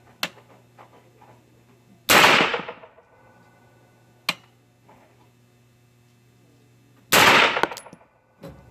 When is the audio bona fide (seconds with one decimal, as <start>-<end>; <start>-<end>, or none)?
0.0-8.7